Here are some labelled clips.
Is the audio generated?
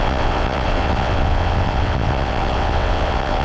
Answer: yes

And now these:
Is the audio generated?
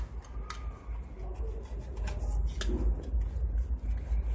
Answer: no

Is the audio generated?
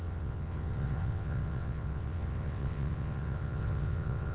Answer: yes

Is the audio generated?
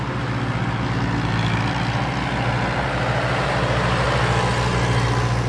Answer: no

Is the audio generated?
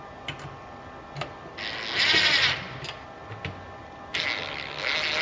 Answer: no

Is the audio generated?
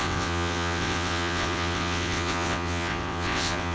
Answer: yes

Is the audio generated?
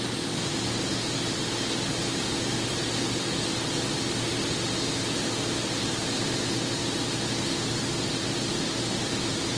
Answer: no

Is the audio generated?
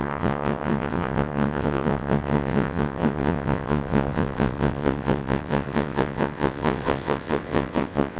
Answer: yes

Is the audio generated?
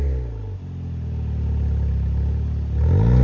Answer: no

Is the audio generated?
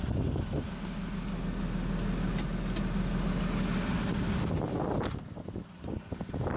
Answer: no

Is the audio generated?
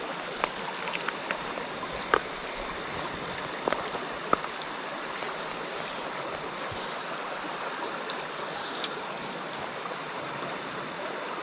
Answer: no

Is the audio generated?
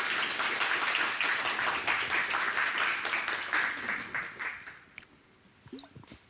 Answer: no